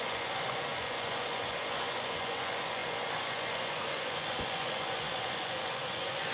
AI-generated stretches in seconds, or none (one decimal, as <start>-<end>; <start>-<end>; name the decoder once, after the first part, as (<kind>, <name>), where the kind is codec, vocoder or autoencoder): 0.0-6.3 (vocoder, Vocos)